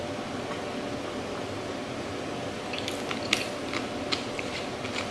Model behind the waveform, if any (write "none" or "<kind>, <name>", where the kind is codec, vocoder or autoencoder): none